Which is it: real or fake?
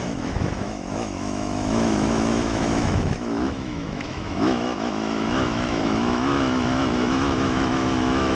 fake